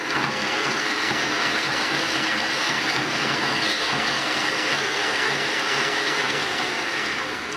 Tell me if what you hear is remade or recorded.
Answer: remade